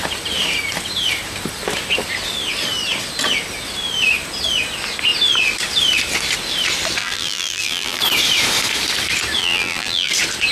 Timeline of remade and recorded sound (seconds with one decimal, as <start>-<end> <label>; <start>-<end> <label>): 0.0-7.0 recorded; 7.0-8.0 remade; 8.0-9.4 recorded; 9.4-10.1 remade; 10.1-10.5 recorded